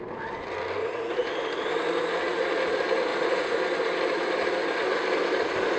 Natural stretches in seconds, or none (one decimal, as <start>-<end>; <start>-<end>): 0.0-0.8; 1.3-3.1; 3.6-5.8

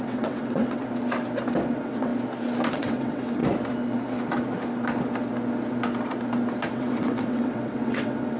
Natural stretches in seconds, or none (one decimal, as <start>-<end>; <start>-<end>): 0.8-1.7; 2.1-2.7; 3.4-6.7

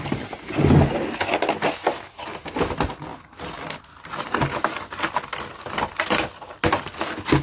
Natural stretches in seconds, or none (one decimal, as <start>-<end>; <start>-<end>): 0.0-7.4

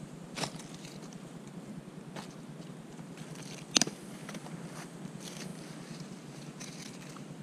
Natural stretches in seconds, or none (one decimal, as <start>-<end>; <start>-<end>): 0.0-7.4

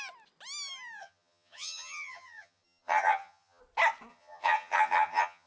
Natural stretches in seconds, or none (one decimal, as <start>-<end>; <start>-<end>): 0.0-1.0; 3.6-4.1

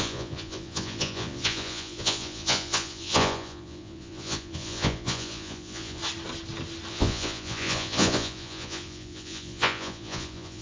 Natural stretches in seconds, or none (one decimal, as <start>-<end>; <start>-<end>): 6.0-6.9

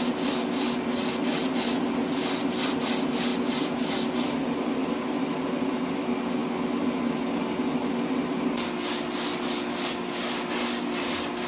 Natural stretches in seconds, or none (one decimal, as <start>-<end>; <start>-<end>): 0.0-11.5

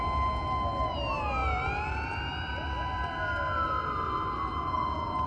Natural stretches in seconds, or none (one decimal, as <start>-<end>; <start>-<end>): 0.0-5.3